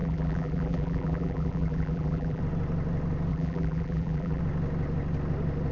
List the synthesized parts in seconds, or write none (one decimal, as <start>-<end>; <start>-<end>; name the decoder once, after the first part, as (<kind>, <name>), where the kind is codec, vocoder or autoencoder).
0.0-2.4 (vocoder, BigVGAN v2); 3.3-4.4